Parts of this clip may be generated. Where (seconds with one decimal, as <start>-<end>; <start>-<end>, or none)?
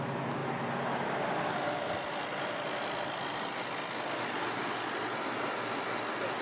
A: none